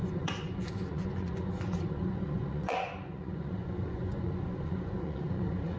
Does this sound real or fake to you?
fake